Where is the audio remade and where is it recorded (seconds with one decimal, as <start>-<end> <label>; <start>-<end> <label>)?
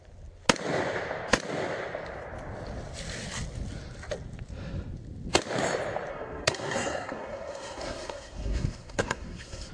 0.0-6.1 recorded; 6.1-9.7 remade